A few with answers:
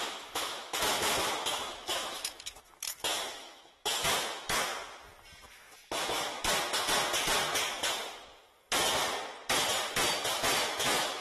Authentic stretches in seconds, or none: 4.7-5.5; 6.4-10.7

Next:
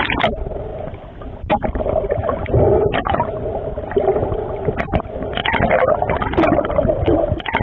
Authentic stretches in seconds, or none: 5.4-6.3

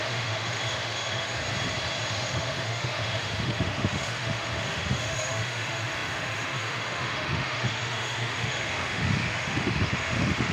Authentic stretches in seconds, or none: 1.4-2.1